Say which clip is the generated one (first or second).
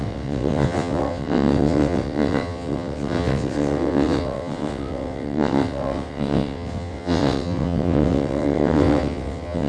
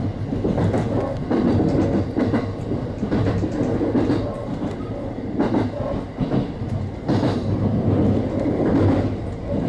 first